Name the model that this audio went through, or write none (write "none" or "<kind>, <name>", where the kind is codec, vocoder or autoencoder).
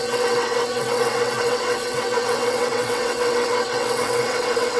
vocoder, WaveNeXt